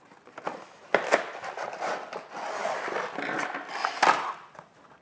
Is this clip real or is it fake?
real